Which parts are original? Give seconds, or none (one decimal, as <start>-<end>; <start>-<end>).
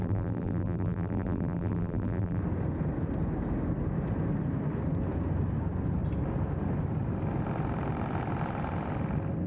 2.4-9.5